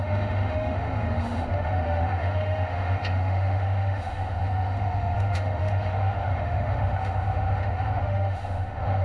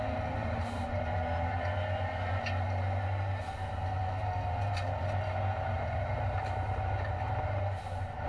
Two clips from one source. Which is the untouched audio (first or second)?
second